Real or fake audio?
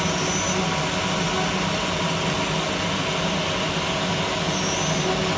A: real